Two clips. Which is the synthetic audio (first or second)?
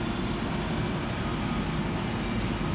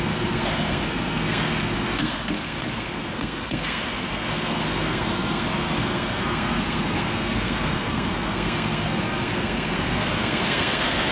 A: second